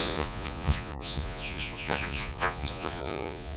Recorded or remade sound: remade